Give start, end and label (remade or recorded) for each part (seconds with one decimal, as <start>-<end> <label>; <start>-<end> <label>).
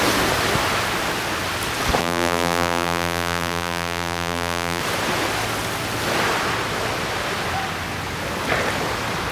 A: 0.0-2.0 recorded; 2.0-4.8 remade; 4.8-9.3 recorded